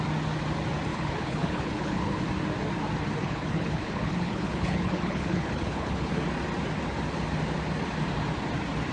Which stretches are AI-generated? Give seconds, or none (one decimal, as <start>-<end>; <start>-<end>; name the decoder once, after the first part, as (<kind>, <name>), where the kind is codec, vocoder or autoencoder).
0.9-2.2 (codec, HILCodec); 3.2-6.1